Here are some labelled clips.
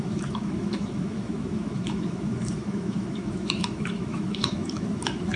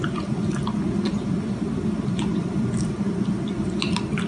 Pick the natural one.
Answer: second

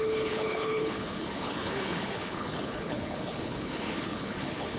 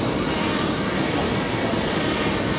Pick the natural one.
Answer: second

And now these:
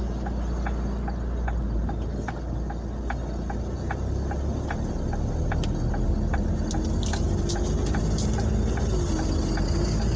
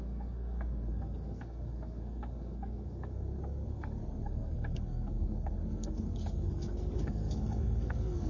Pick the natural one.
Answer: first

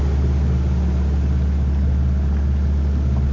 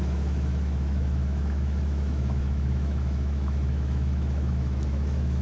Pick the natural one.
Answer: first